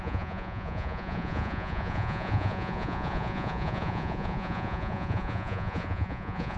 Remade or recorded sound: remade